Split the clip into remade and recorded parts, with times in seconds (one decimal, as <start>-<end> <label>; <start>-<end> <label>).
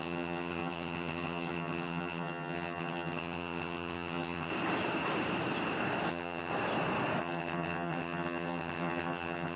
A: 0.0-4.5 remade; 4.5-6.1 recorded; 6.1-6.5 remade; 6.5-7.2 recorded; 7.2-9.6 remade